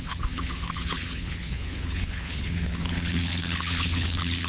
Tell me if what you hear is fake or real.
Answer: fake